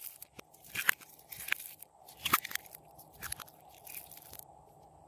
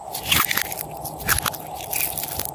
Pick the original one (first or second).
second